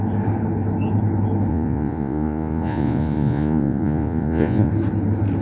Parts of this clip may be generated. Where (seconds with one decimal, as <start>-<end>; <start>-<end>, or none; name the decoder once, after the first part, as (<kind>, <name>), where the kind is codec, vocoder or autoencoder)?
1.5-4.7 (vocoder, Vocos)